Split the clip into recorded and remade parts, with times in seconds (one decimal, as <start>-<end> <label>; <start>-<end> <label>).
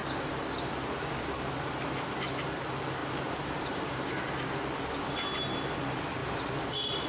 0.0-3.0 recorded; 3.0-4.2 remade; 4.2-7.1 recorded